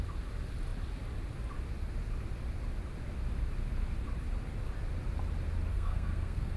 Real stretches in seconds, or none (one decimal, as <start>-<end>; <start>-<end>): 0.0-5.7